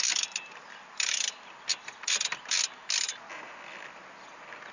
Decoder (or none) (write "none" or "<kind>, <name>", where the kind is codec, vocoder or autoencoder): none